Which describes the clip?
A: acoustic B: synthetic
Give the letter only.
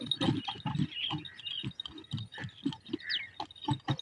A